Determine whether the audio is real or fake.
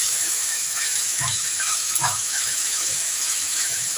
fake